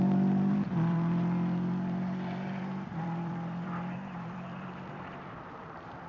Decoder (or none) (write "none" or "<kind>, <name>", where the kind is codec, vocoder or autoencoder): vocoder, BigVGAN v2